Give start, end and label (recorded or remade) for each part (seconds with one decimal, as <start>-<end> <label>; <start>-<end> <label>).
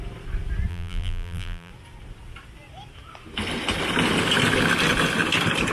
0.0-0.7 recorded; 0.7-1.7 remade; 1.7-5.7 recorded